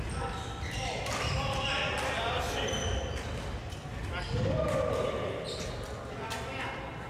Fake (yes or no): no